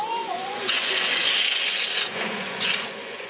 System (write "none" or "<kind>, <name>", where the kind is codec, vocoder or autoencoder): vocoder, Vocos